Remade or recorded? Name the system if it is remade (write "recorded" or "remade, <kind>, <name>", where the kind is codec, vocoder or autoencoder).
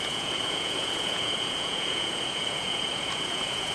remade, vocoder, Vocos